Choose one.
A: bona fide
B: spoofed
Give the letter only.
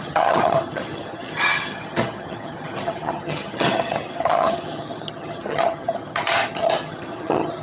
B